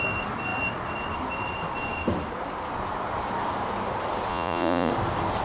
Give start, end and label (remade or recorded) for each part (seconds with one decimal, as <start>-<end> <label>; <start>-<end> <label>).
0.0-4.3 recorded; 4.3-4.9 remade; 4.9-5.4 recorded